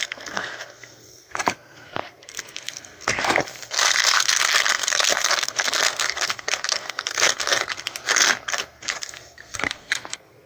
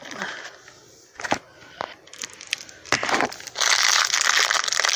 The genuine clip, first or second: second